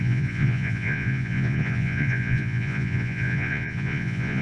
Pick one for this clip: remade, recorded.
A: remade